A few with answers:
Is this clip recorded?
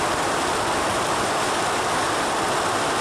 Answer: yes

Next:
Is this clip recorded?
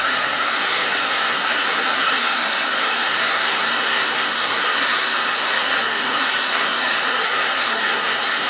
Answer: no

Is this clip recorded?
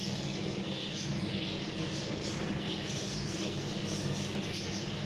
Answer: no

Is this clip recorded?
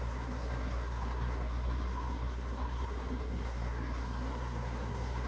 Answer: no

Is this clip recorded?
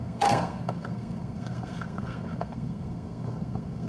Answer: no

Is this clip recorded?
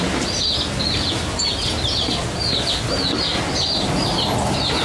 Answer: yes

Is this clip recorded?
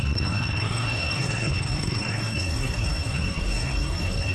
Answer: no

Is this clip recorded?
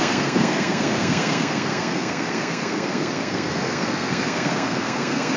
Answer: no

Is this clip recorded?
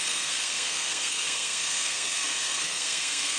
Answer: no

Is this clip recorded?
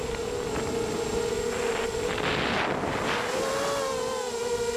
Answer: yes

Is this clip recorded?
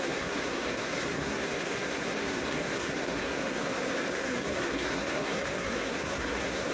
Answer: no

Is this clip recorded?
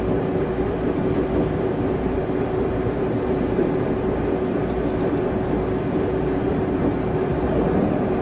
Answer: yes